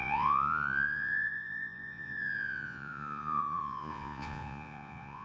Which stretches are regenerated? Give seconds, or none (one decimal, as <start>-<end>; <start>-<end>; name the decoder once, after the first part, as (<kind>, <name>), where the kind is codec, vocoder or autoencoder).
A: 0.0-5.2 (vocoder, Vocos)